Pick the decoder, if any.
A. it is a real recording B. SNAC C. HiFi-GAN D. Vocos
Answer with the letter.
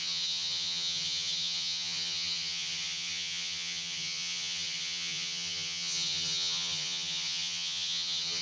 C